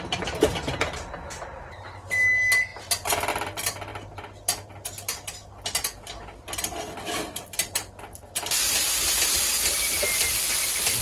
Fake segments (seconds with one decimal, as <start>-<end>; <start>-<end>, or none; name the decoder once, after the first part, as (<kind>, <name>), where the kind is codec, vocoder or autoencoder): none